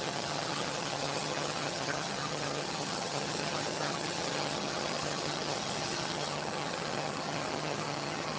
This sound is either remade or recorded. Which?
remade